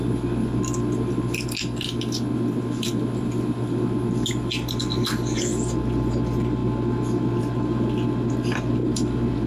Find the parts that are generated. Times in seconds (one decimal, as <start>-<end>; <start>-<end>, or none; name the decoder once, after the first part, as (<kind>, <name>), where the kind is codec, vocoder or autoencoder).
none